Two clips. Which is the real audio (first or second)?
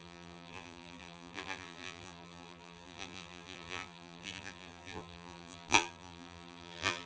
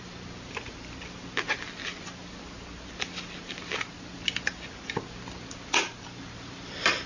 second